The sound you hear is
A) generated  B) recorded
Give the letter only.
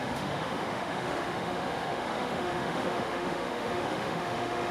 A